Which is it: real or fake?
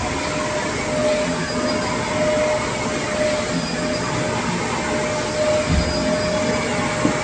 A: real